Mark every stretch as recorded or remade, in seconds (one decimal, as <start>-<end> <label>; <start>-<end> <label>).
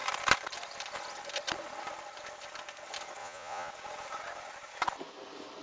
0.0-3.2 recorded; 3.2-3.7 remade; 3.7-5.6 recorded